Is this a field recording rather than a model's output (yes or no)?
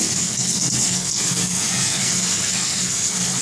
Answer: no